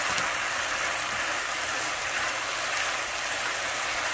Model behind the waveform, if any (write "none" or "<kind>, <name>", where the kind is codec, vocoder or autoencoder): none